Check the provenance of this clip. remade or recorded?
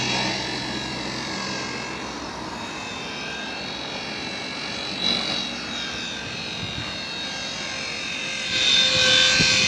recorded